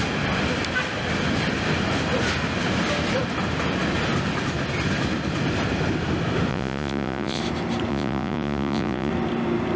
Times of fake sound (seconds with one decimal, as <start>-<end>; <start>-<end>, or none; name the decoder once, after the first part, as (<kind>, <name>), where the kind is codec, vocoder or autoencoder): 6.5-7.4 (vocoder, Vocos); 7.9-9.1